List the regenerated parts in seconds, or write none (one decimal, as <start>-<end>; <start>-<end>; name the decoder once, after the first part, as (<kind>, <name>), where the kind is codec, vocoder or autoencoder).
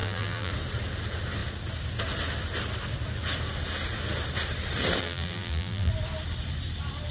0.0-0.5 (vocoder, BigVGAN v2); 5.0-5.9